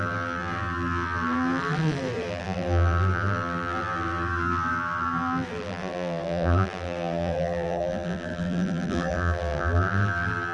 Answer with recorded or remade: remade